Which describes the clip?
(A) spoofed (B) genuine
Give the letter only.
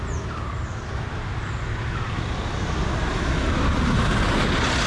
B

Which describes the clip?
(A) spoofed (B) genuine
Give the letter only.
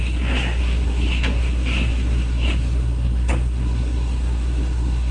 A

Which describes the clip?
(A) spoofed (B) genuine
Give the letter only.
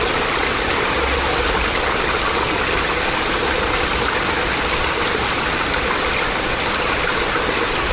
B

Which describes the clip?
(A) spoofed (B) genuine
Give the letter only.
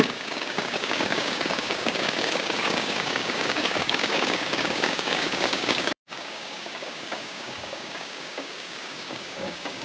A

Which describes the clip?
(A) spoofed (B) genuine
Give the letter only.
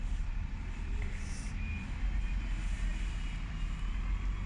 B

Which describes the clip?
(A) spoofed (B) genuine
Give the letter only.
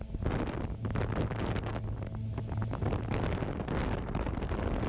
B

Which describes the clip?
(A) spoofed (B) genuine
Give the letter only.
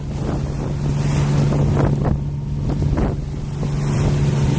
B